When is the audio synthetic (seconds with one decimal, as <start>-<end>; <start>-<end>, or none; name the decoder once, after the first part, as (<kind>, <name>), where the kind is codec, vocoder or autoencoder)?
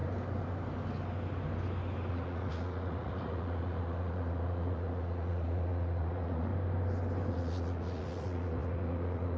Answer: 2.1-6.5 (vocoder, Vocos); 7.3-9.4